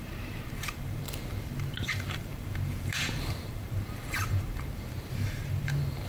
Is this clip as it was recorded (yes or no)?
no